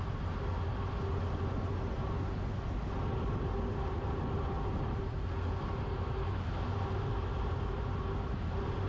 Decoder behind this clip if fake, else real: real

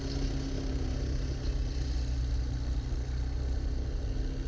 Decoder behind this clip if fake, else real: real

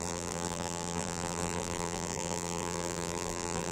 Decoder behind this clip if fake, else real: fake, vocoder, BigVGAN v2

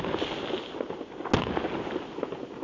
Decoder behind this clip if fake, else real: real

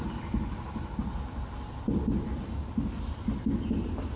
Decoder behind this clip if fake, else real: real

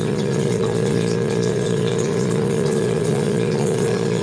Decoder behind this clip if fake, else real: fake, vocoder, Vocos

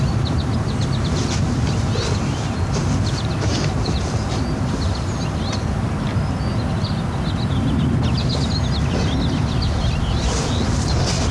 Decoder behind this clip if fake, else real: real